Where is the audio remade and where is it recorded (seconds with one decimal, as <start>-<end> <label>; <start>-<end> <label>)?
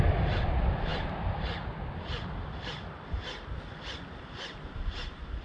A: 0.0-5.4 recorded